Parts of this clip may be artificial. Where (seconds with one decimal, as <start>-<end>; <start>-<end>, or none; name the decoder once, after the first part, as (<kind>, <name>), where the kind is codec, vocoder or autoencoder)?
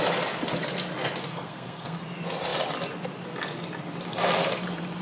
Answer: 1.2-2.0 (codec, SNAC)